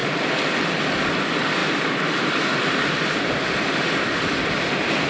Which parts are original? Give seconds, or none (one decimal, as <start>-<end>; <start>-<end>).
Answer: 1.1-1.6; 4.5-5.1